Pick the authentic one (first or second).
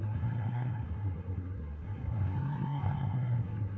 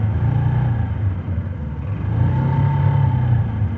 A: second